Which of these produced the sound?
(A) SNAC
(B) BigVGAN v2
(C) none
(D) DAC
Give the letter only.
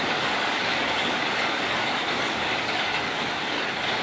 D